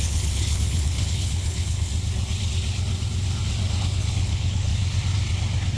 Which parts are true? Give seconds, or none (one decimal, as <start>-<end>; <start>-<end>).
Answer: 1.9-3.8; 4.7-5.8